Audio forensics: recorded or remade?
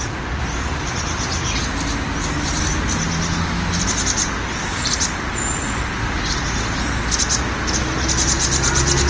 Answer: recorded